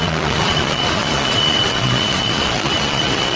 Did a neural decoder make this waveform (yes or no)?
yes